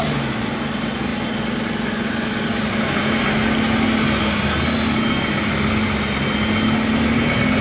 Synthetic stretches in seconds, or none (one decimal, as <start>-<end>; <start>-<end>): none